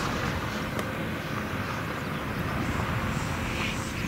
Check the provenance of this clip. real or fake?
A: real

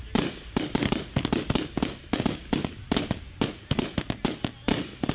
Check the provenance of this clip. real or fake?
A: real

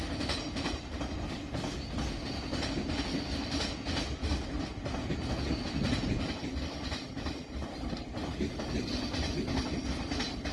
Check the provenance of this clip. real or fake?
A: real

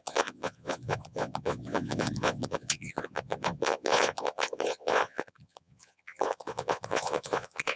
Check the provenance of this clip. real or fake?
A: fake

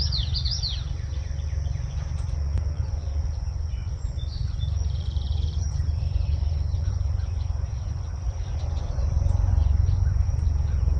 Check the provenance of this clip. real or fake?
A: fake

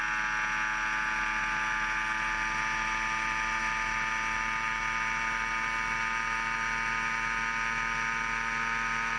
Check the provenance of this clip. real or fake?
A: real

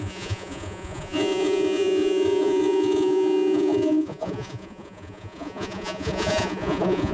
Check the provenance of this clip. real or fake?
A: fake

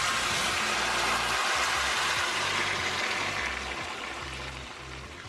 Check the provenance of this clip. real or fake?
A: real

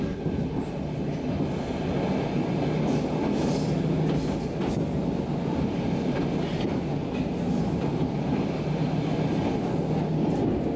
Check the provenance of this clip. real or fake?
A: real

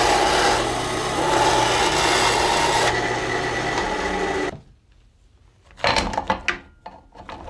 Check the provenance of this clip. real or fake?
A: real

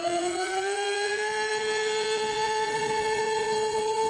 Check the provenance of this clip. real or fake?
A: fake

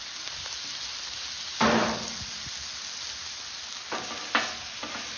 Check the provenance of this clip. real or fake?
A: real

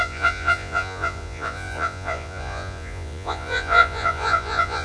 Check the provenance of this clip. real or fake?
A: fake